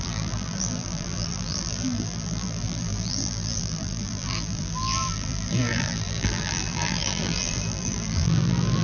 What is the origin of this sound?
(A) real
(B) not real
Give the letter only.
B